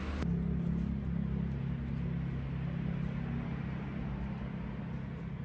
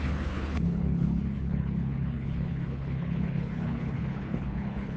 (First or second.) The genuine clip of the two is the first